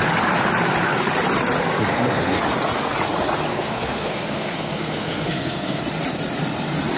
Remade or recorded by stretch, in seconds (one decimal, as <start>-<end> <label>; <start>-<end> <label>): 0.0-1.9 recorded; 1.9-2.4 remade; 2.4-3.5 recorded; 3.5-5.8 remade; 5.8-7.0 recorded